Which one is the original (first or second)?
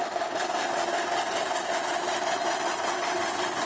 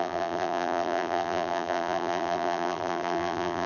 first